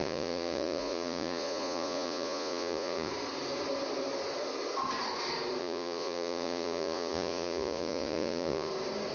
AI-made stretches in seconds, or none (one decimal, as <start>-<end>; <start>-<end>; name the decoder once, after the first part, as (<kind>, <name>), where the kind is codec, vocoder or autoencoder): 0.0-3.1 (vocoder, Vocos); 5.6-8.7